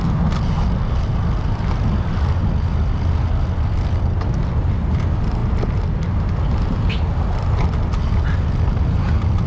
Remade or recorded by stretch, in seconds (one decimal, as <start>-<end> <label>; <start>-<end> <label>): 0.0-9.5 recorded

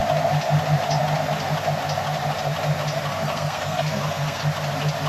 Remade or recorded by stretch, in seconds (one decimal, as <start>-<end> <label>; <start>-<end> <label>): 0.0-3.1 recorded; 3.1-4.4 remade; 4.4-5.1 recorded

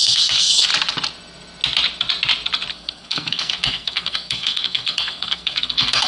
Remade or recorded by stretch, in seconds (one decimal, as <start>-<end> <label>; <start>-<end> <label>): 0.0-0.7 remade; 0.7-2.7 recorded; 2.7-6.1 remade

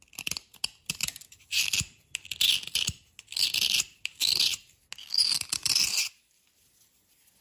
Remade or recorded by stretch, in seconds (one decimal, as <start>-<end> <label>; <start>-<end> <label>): 0.0-7.4 recorded

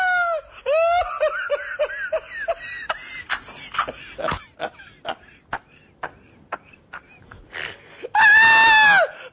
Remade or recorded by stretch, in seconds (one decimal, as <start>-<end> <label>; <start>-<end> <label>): 0.0-9.3 recorded

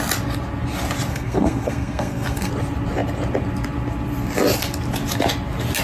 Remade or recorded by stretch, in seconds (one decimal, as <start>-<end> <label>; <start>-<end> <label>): 0.0-1.1 recorded; 1.1-2.5 remade; 2.5-5.8 recorded

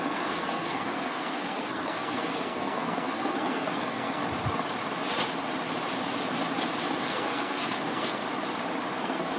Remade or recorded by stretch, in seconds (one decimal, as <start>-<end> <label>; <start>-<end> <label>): 0.0-4.2 remade; 4.2-7.0 recorded; 7.0-8.2 remade; 8.2-9.0 recorded; 9.0-9.4 remade

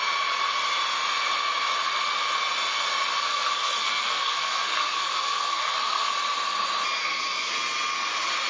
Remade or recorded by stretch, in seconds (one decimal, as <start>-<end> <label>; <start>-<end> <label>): 0.0-3.2 recorded; 3.2-6.1 remade; 6.1-7.0 recorded; 7.0-7.5 remade; 7.5-8.5 recorded